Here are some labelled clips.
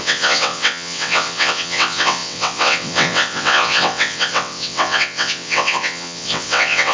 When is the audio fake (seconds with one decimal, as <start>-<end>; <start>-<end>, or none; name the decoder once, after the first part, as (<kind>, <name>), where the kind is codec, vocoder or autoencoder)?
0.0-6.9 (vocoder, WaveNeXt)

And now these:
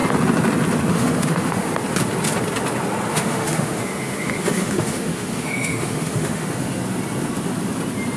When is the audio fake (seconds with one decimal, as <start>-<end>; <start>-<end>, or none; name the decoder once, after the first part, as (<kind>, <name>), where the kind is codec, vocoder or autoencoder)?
0.9-1.7 (autoencoder, DAC-VAE); 3.1-6.8

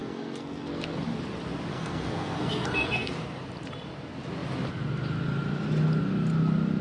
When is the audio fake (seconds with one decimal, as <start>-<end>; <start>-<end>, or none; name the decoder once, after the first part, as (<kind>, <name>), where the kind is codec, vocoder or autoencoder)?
0.0-1.0 (codec, SNAC); 1.7-3.1